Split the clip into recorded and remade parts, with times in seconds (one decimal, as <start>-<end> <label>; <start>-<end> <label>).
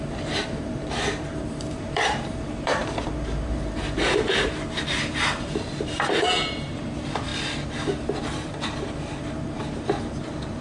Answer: 0.0-7.3 remade; 7.3-8.2 recorded; 8.2-10.6 remade